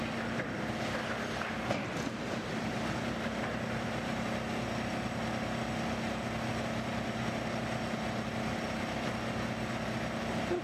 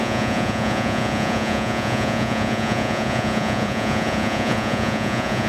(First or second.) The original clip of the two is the first